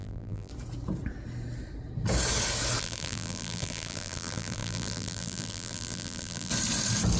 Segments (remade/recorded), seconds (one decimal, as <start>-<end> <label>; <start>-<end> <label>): 0.0-0.5 remade; 0.5-2.8 recorded; 2.8-6.5 remade; 6.5-7.2 recorded